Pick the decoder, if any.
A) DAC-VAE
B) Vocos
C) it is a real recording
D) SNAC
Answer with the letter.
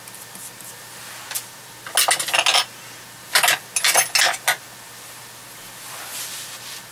C